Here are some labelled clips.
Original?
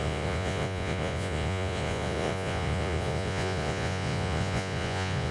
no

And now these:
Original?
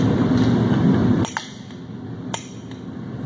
yes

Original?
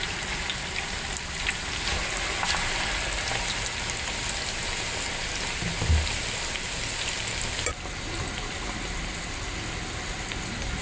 yes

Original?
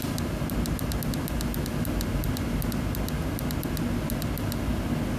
yes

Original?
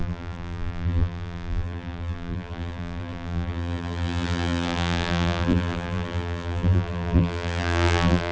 no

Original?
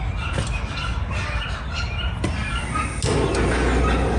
yes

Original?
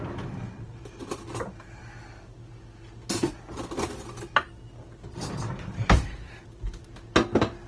yes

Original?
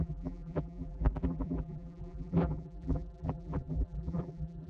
no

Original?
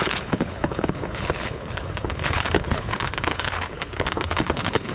no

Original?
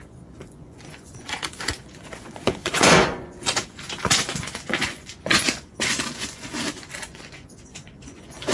no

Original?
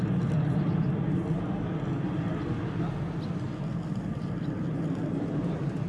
yes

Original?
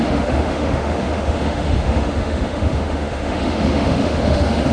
no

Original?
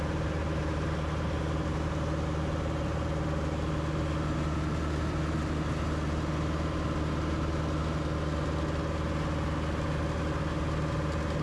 yes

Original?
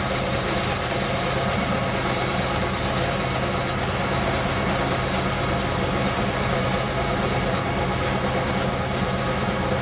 yes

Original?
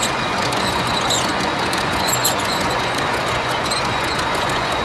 no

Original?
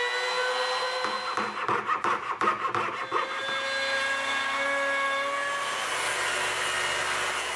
yes